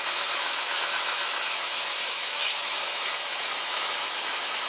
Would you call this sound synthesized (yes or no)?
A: yes